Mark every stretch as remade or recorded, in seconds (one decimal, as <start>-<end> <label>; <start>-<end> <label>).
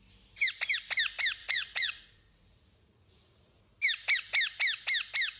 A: 0.0-1.4 recorded; 1.4-3.6 remade; 3.6-5.4 recorded